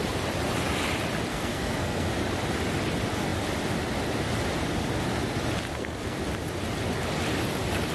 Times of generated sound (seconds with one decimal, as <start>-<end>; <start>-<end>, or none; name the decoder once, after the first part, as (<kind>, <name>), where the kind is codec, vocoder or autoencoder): 1.3-2.1 (codec, SNAC); 5.7-6.2